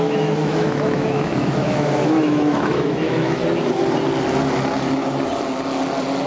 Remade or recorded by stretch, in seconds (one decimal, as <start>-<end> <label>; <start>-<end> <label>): 0.0-3.4 remade; 3.4-6.3 recorded